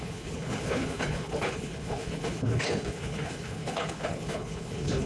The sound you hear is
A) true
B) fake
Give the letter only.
B